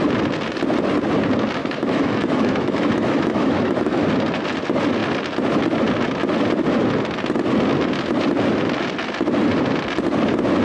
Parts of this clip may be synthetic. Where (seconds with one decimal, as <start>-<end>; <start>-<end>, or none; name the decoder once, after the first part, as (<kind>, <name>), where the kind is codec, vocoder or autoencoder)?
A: 1.6-4.0 (autoencoder, DAC-VAE)

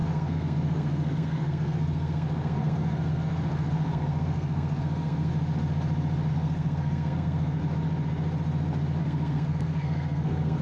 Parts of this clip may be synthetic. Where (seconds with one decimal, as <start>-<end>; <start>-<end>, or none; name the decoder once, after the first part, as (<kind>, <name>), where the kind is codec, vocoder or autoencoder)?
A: 0.0-5.3 (codec, SNAC); 6.3-7.6; 9.0-10.6